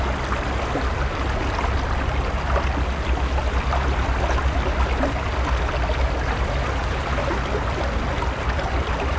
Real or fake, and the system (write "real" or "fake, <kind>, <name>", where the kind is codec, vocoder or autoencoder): real